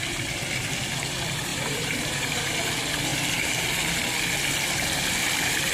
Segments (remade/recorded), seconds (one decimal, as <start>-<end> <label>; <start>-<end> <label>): 0.0-1.5 recorded; 1.5-2.6 remade; 2.6-5.7 recorded

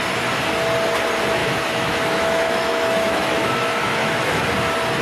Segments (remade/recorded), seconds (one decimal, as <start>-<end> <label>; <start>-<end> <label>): 0.0-1.4 recorded; 1.4-4.4 remade; 4.4-5.0 recorded

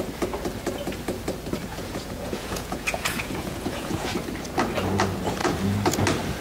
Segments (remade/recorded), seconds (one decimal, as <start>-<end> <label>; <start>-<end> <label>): 0.0-1.7 recorded; 1.7-4.1 remade; 4.1-6.4 recorded

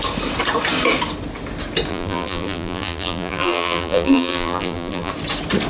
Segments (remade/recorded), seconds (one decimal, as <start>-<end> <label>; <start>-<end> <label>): 0.0-1.9 recorded; 1.9-5.1 remade; 5.1-5.7 recorded